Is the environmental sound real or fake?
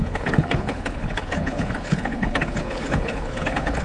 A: fake